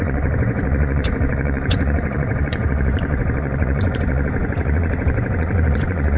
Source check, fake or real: fake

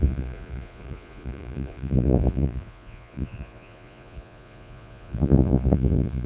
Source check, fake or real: fake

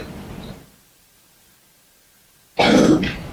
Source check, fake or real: real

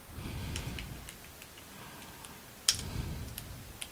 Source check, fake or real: real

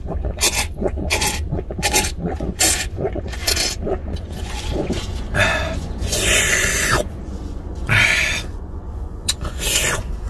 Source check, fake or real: fake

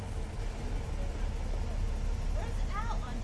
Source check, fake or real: real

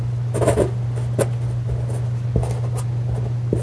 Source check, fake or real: real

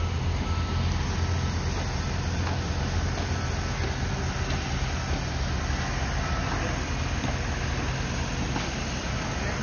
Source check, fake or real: real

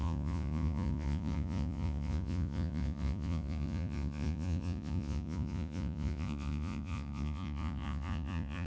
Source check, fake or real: fake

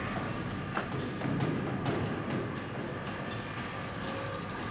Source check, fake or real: real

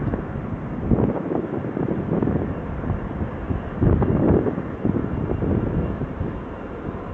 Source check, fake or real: real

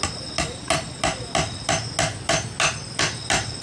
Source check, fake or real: real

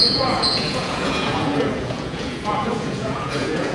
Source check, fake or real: fake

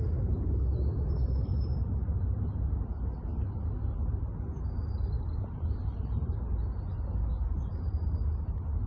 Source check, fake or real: real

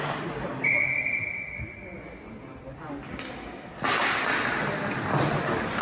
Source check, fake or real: real